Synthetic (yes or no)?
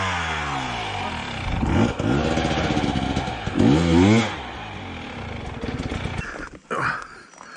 no